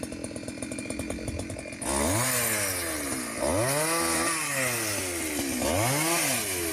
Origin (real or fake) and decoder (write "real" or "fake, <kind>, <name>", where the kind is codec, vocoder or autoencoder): real